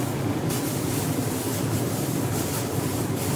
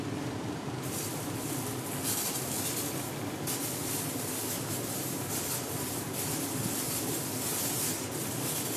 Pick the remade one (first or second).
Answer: first